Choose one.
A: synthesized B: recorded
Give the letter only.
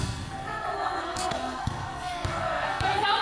A